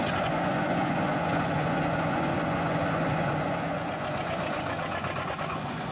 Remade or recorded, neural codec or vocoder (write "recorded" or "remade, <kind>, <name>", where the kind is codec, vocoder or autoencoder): remade, vocoder, Vocos